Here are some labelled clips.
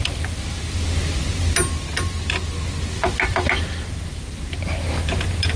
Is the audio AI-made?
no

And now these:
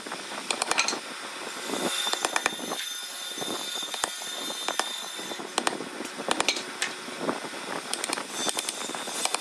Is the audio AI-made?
no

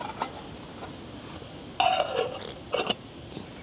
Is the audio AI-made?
no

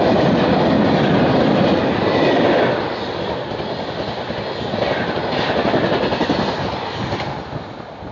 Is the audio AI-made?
no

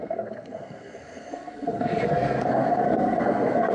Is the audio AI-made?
yes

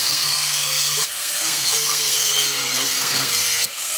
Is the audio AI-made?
yes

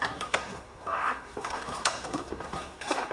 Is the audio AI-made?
yes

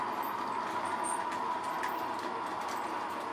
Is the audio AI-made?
no